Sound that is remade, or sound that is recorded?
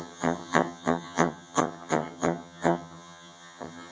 remade